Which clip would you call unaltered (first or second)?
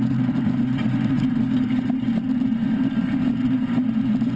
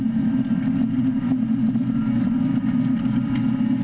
second